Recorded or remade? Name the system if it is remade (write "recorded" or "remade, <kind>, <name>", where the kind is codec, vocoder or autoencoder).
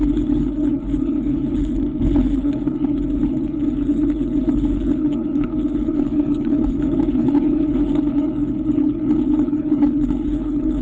remade, codec, HILCodec